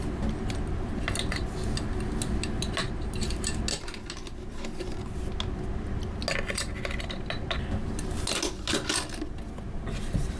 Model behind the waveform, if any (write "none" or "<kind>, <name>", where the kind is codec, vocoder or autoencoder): none